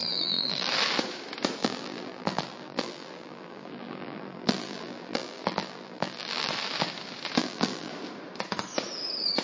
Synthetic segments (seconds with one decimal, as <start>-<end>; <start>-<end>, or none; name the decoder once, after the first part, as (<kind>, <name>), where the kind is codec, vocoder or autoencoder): 0.0-0.7 (vocoder, BigVGAN v2); 1.6-6.5; 7.4-7.9